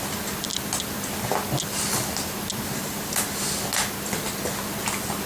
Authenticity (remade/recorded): recorded